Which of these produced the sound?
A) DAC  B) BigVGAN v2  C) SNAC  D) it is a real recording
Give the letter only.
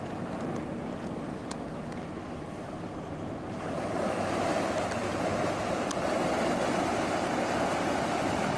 D